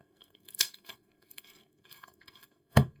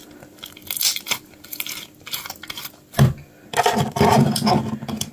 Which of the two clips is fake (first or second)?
first